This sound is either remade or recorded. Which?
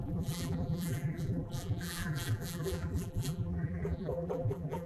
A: remade